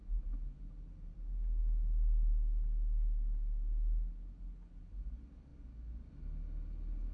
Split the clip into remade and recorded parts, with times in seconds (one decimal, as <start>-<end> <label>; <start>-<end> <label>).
0.0-7.1 recorded